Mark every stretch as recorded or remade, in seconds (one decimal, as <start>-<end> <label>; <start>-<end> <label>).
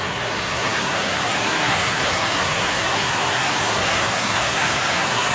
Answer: 0.0-5.3 remade